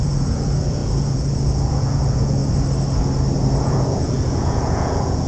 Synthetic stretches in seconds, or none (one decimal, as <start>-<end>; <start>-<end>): 0.0-2.4; 3.6-5.3